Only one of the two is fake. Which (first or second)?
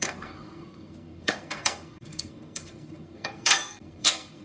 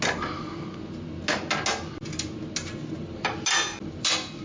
first